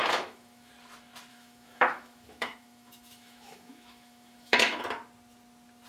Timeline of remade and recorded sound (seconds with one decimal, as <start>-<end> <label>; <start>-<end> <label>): 0.0-0.7 remade; 0.7-1.3 recorded; 1.3-4.8 remade; 4.8-5.9 recorded